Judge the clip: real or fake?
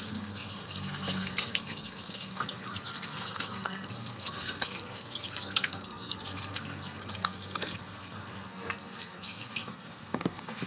fake